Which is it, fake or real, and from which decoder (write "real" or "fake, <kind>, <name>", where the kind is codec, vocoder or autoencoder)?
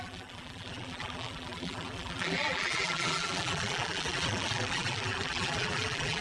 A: fake, vocoder, BigVGAN v2